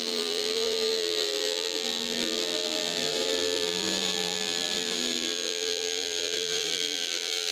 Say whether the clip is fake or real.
fake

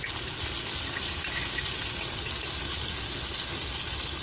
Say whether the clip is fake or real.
real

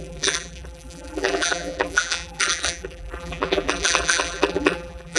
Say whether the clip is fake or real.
fake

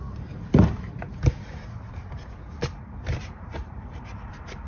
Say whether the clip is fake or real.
fake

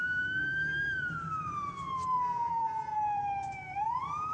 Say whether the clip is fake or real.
fake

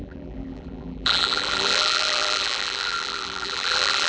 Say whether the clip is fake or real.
fake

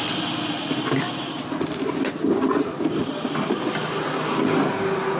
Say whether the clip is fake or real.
real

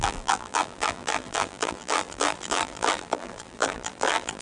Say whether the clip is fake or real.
fake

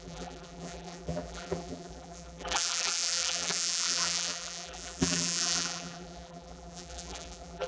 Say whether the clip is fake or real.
fake